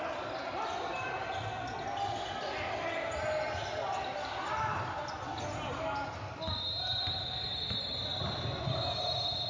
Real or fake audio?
real